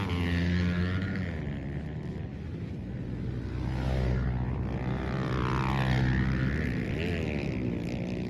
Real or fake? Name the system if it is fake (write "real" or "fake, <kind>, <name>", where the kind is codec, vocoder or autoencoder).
real